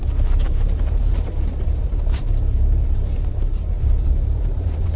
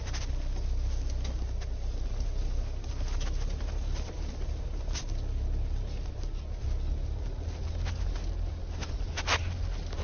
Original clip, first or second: second